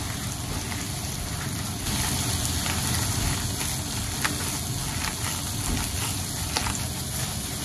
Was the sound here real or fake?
real